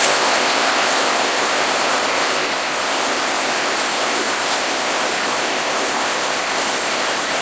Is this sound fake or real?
fake